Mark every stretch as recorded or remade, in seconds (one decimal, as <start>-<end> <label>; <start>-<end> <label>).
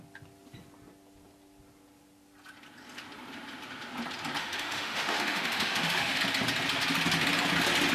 0.0-4.4 recorded; 4.4-6.2 remade; 6.2-7.9 recorded